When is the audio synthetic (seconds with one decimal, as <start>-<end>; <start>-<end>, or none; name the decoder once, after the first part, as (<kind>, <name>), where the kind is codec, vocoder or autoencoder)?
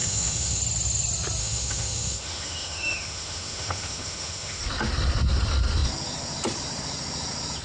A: 0.0-0.6 (autoencoder, DAC-VAE); 1.4-4.6